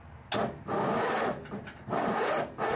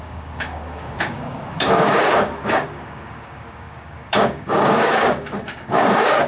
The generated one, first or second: second